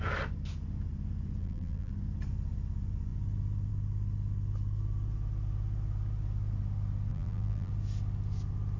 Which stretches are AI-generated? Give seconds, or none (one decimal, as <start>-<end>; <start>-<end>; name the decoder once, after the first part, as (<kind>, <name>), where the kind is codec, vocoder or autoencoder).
1.4-1.9 (vocoder, BigVGAN v2); 7.1-7.7

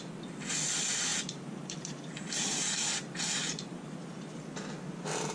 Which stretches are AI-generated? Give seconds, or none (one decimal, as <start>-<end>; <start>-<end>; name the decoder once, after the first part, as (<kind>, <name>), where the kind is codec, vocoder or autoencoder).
1.1-4.3 (vocoder, BigVGAN v2)

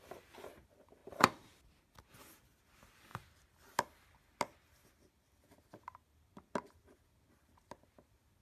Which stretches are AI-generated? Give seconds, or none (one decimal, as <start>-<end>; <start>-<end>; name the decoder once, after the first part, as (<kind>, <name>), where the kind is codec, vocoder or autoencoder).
1.0-1.6 (vocoder, BigVGAN v2)

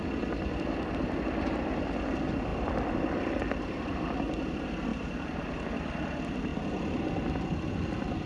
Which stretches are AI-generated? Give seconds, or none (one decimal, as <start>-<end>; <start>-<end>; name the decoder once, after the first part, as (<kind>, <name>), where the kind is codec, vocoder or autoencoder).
4.9-5.6 (vocoder, BigVGAN v2)